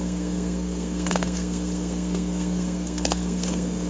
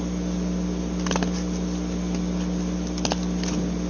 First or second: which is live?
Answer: second